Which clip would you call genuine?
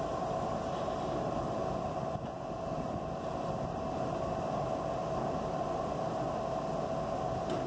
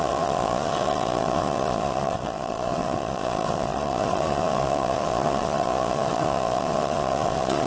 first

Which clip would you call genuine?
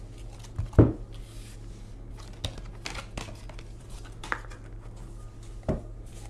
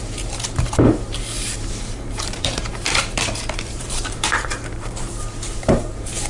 first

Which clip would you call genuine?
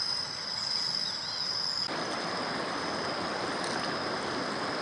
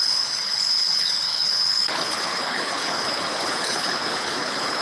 first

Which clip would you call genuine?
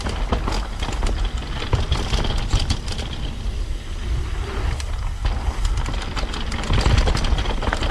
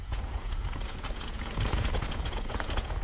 first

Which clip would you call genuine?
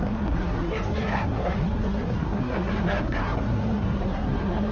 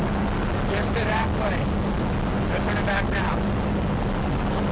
second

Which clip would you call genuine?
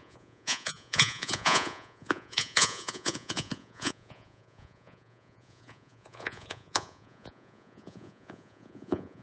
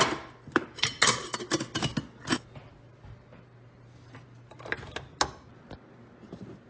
second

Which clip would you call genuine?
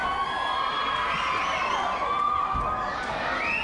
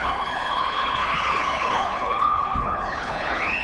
first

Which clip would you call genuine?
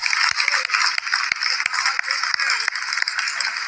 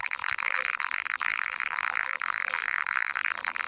first